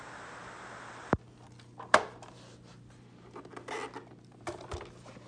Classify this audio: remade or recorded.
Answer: recorded